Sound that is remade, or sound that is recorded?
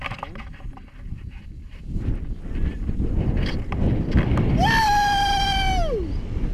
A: recorded